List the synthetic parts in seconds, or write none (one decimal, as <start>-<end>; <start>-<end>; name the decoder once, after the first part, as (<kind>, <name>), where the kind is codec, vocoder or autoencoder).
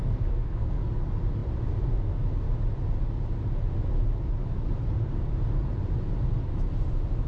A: 0.0-0.9 (codec, SNAC)